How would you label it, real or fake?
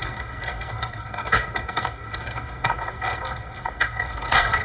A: fake